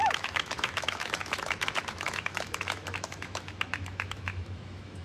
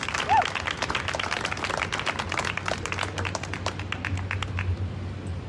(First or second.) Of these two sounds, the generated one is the first